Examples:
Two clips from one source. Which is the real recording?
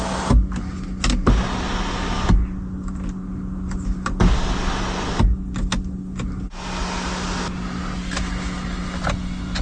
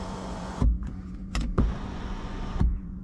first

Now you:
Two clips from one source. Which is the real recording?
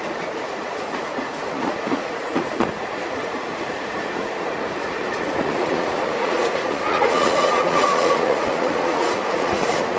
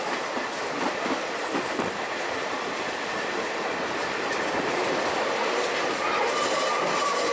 second